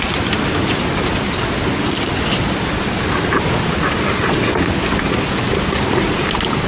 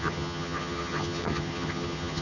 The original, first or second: first